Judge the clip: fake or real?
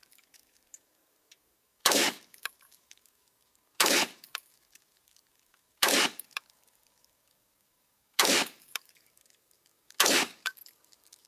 fake